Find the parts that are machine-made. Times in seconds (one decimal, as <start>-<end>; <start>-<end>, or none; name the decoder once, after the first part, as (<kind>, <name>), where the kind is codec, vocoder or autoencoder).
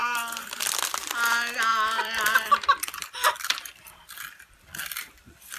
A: 0.0-0.9 (vocoder, BigVGAN v2); 1.7-5.1